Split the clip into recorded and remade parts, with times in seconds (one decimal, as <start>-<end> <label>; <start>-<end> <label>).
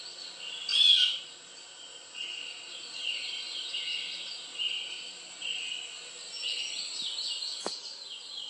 0.0-8.5 recorded